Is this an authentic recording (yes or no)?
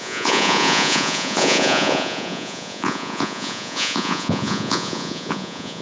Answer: no